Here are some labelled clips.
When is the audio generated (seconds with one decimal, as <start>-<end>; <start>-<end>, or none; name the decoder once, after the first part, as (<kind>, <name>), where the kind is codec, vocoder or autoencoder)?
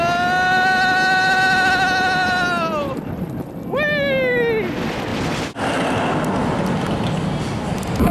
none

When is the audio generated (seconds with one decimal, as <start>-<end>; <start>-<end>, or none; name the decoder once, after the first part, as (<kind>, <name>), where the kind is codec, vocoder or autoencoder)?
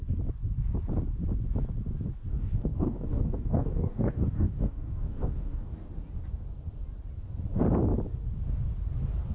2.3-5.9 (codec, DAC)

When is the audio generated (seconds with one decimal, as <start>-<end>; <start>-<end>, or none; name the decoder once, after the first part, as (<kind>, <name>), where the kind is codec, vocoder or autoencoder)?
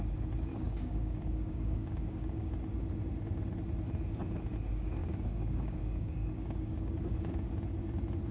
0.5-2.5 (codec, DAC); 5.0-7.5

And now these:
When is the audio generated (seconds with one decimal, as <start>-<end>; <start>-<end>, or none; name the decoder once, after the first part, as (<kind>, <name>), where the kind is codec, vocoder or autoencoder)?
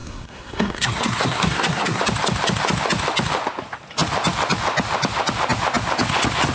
0.0-2.0 (codec, SNAC)